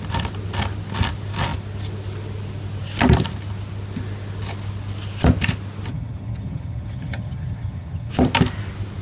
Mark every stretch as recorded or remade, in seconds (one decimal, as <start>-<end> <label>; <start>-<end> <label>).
0.0-5.9 recorded; 5.9-8.1 remade; 8.1-9.0 recorded

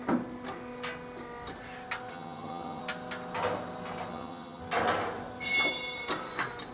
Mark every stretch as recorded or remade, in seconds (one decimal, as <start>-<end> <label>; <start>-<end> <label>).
0.0-2.1 recorded; 2.1-2.8 remade; 2.8-4.1 recorded; 4.1-4.6 remade; 4.6-6.7 recorded

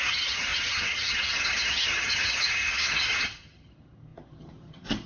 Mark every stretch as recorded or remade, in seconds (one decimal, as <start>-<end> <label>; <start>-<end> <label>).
0.0-5.1 remade

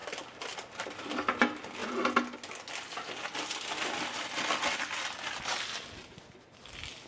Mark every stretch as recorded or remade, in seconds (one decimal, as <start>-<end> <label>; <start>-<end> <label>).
0.0-7.1 recorded

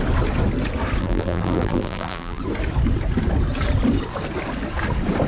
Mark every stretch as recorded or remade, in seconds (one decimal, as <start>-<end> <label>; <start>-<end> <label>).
0.0-1.0 recorded; 1.0-2.4 remade; 2.4-5.3 recorded